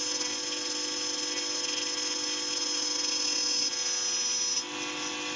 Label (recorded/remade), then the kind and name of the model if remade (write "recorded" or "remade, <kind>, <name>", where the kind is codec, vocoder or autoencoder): recorded